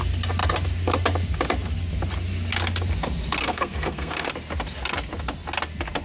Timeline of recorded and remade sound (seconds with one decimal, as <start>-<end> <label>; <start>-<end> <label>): 0.0-3.4 recorded; 3.4-4.3 remade; 4.3-6.0 recorded